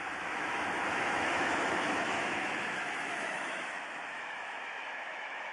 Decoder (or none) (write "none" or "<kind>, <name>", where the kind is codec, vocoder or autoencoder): autoencoder, DAC-VAE